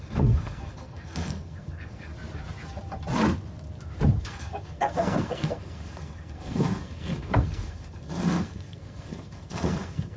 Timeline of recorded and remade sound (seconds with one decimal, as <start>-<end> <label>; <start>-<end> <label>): 0.0-2.1 remade; 2.1-4.2 recorded; 4.2-10.2 remade